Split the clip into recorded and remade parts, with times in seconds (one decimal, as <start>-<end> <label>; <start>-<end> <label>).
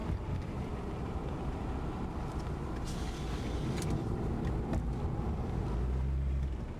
0.0-4.1 remade; 4.1-6.8 recorded